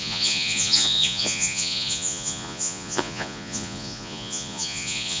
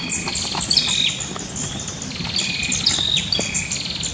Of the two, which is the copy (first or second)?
first